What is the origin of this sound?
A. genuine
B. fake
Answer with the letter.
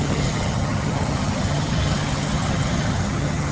B